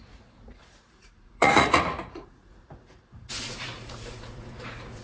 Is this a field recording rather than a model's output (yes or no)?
no